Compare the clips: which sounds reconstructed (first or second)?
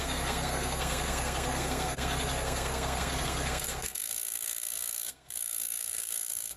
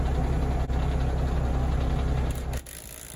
first